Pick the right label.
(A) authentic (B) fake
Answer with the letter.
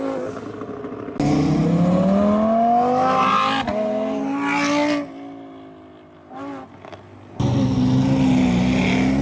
A